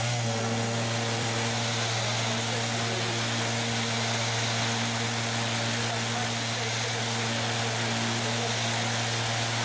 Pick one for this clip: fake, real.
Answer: real